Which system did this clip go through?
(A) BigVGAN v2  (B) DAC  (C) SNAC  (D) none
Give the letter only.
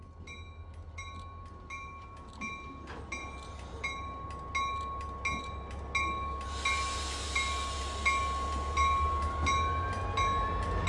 D